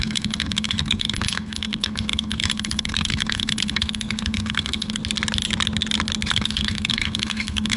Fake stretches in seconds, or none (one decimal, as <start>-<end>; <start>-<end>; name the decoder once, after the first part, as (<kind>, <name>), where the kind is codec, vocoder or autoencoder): 0.0-5.0 (codec, SNAC); 6.3-7.8